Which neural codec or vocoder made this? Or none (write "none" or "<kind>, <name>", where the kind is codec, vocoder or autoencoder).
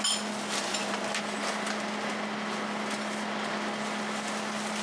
none